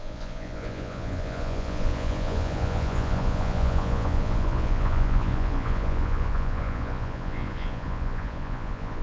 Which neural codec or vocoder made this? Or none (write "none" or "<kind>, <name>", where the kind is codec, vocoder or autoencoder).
vocoder, Vocos